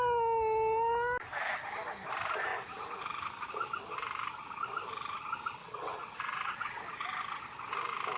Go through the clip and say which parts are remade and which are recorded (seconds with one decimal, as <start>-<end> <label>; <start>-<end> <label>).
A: 0.0-5.6 recorded; 5.6-6.8 remade; 6.8-8.2 recorded